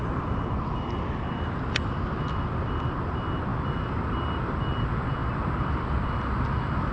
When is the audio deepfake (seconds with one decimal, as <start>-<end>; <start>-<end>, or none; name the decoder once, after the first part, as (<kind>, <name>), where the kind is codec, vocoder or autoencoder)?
none